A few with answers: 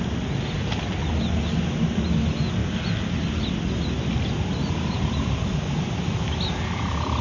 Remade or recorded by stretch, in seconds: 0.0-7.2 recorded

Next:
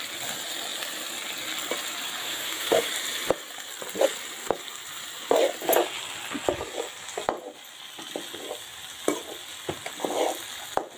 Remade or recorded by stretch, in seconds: 0.0-2.2 recorded; 2.2-2.9 remade; 2.9-11.0 recorded

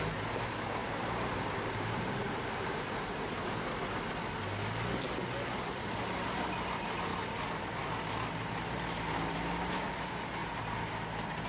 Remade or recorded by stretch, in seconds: 0.0-11.5 recorded

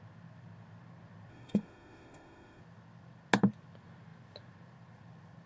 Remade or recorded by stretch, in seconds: 0.0-1.3 recorded; 1.3-2.6 remade; 2.6-5.5 recorded